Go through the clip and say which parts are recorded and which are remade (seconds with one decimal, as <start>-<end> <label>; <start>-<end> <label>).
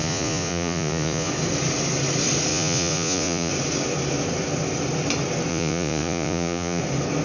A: 0.0-1.3 remade; 1.3-2.5 recorded; 2.5-3.5 remade; 3.5-5.5 recorded; 5.5-6.8 remade; 6.8-7.2 recorded